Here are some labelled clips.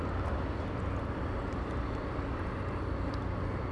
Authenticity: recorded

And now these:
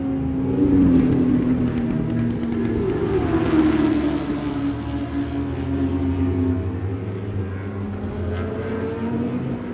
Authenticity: recorded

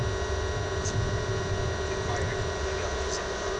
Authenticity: recorded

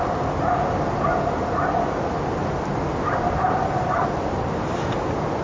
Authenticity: recorded